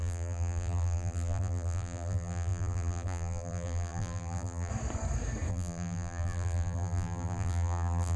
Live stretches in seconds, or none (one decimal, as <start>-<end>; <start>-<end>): 4.7-5.5